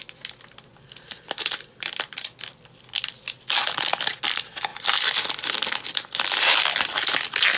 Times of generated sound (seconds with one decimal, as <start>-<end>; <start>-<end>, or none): none